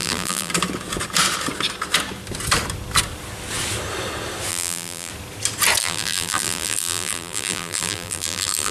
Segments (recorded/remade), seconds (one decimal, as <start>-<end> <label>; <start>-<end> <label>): 0.0-0.5 remade; 0.5-4.5 recorded; 4.5-5.1 remade; 5.1-5.8 recorded; 5.8-8.7 remade